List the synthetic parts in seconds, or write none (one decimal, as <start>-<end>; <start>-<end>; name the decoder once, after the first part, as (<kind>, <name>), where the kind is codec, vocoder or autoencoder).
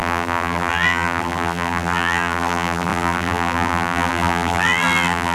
0.0-5.3 (vocoder, BigVGAN v2)